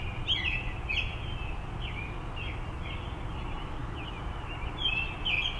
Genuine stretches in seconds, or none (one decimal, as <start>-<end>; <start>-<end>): 0.0-5.6